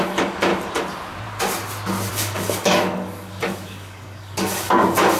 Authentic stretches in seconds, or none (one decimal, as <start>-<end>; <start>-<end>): 0.5-2.1

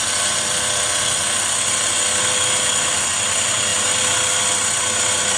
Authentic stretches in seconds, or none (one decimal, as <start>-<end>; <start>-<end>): 0.0-5.4

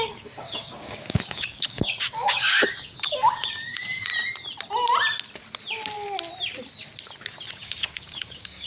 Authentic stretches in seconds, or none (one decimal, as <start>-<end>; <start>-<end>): 4.1-7.5

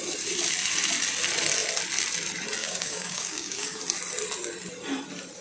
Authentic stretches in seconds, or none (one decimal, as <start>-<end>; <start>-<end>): 0.0-2.6; 3.8-5.4

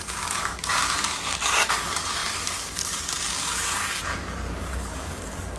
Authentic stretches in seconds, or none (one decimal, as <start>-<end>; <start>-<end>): none

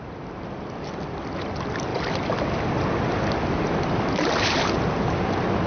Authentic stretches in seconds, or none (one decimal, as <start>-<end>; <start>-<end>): 0.0-5.7